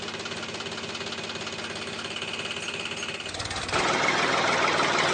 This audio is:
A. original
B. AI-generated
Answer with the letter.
A